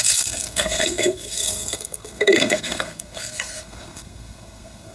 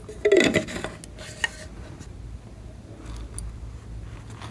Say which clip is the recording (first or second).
second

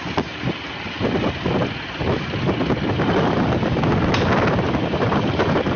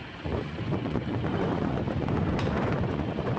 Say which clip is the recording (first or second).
first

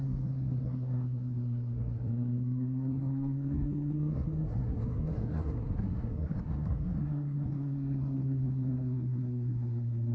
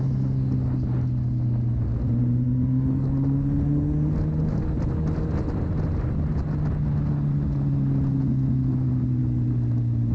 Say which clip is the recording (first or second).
second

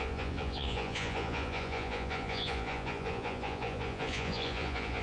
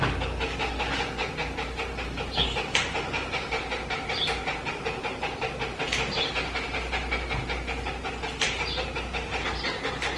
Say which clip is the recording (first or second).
second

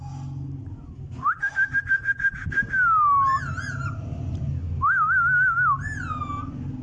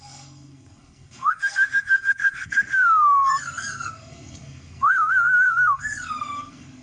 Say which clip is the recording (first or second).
first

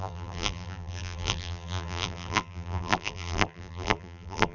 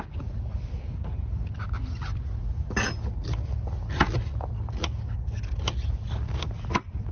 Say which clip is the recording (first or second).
second